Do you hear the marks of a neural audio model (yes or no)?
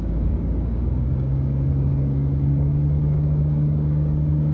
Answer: yes